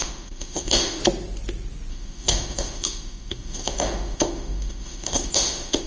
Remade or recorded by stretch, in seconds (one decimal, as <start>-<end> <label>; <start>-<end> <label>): 0.0-1.0 remade; 1.0-1.9 recorded; 1.9-5.9 remade